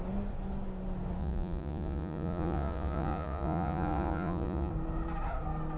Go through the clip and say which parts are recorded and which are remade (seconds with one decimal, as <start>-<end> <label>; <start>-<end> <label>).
0.0-1.2 recorded; 1.2-4.7 remade; 4.7-5.8 recorded